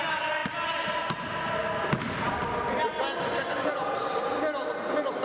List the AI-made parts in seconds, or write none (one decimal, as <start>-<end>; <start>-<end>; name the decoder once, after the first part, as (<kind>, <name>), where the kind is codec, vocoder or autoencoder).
none